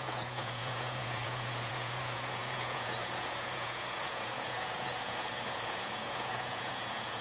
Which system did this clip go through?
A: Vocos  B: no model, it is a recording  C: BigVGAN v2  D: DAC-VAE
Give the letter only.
A